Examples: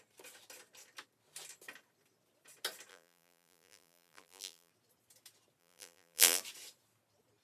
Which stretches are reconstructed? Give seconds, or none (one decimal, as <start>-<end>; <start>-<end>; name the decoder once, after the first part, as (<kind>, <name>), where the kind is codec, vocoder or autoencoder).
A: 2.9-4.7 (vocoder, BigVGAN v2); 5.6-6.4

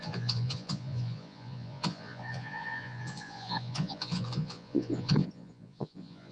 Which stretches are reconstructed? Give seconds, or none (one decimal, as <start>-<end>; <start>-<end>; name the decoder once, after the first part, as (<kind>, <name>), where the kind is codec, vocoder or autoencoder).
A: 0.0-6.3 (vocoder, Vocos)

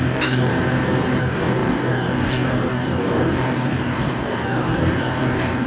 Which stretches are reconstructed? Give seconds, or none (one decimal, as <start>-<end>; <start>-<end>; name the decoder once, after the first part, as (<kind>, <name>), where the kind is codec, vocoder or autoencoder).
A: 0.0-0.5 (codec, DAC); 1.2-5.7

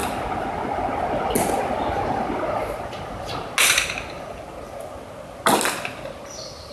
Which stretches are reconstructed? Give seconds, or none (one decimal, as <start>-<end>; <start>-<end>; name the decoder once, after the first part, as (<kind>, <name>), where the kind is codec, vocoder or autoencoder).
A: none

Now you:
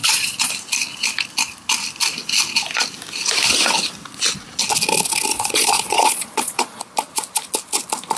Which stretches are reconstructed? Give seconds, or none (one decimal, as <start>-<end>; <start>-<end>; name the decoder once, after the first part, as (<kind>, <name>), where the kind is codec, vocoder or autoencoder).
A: 0.0-0.5 (vocoder, Vocos); 5.3-6.8

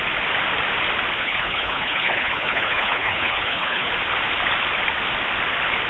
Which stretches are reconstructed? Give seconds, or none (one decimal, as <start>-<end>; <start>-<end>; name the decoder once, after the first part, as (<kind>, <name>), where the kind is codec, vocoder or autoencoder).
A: 1.2-3.9 (codec, HILCodec)

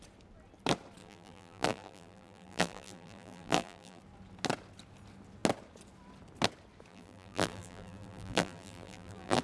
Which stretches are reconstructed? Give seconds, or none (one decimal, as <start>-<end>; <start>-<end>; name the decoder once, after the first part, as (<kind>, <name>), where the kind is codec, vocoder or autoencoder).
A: 1.0-4.0 (vocoder, BigVGAN v2); 6.9-9.4

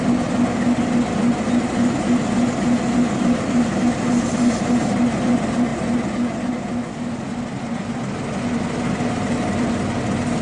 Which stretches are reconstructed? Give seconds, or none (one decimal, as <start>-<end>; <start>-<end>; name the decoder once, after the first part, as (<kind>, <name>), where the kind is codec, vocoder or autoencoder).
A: none